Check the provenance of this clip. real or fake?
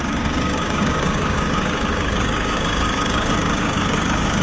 fake